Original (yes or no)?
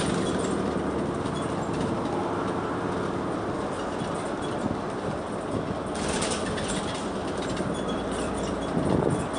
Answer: yes